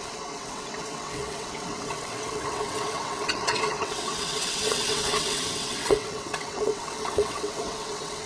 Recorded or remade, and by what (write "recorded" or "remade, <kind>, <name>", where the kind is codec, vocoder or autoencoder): remade, vocoder, WaveNeXt